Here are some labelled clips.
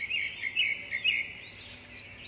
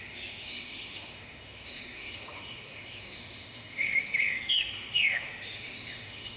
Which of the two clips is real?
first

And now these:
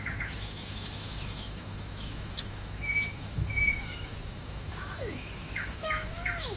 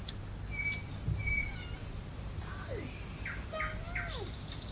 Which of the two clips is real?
second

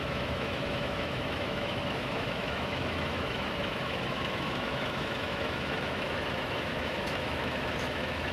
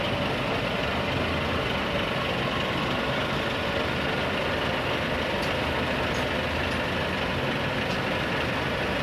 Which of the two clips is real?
second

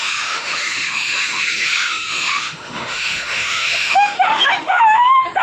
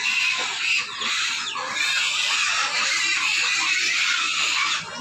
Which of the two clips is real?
second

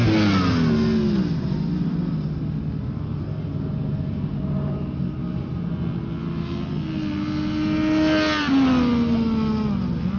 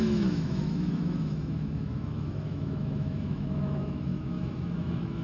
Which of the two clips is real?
first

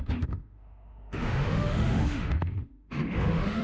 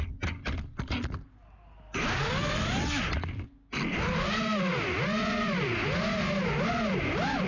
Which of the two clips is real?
second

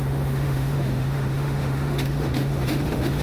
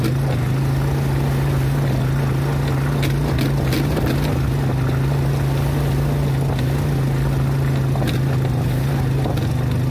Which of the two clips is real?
second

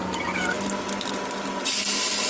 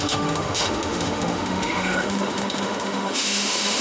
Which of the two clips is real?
first